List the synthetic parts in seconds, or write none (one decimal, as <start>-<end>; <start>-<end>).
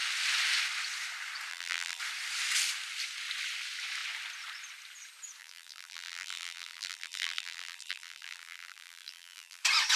1.5-2.0; 5.4-9.6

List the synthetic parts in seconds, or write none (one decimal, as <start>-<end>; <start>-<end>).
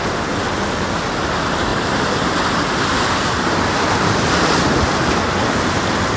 1.7-4.1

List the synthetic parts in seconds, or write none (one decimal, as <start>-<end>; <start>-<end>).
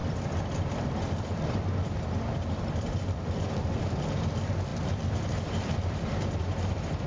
0.0-4.0; 4.7-6.1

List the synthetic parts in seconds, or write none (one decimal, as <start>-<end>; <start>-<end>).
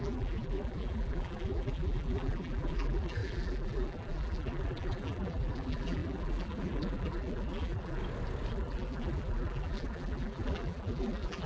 0.0-8.0; 8.5-11.5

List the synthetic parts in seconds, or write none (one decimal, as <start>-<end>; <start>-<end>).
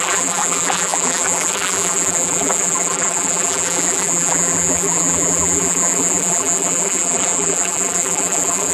0.0-8.7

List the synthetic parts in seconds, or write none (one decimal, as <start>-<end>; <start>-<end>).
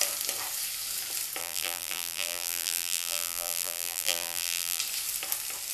1.4-4.8